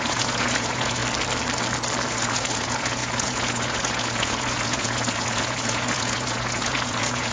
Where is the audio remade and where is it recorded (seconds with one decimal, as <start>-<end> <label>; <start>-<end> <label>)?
0.0-1.0 remade; 1.0-2.1 recorded; 2.1-7.3 remade